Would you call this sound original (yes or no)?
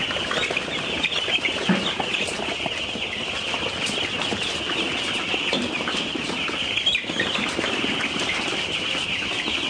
yes